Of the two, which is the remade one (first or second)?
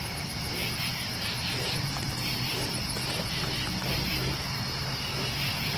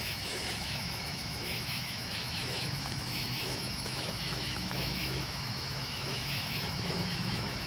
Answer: second